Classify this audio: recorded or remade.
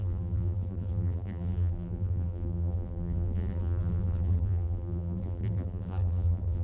remade